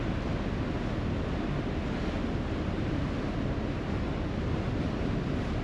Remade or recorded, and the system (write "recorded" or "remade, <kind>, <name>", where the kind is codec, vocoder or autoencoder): recorded